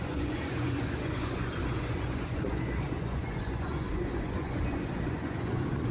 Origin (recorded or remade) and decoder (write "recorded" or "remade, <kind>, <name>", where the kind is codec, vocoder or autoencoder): remade, vocoder, Vocos